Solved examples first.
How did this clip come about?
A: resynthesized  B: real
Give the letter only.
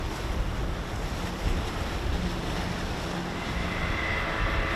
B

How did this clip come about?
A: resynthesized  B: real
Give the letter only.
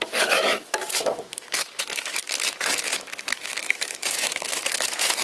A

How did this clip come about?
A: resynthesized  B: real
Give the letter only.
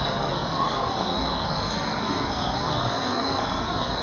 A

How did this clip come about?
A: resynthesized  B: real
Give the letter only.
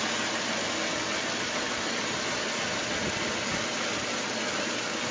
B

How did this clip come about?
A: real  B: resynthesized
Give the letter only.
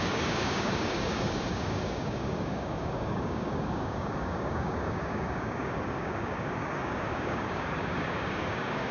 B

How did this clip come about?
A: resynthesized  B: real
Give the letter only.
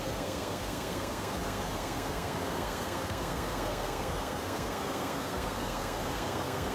A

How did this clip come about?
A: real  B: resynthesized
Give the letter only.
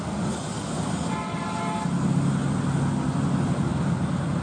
A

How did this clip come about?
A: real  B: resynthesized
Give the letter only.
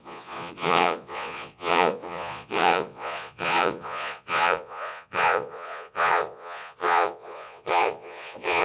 B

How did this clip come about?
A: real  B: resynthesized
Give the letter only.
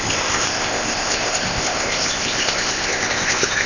B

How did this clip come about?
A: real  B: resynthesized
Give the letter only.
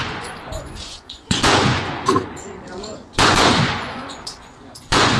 B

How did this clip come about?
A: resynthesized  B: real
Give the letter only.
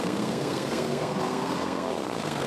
A